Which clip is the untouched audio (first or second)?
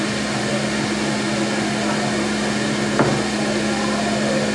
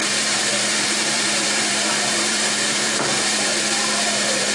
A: first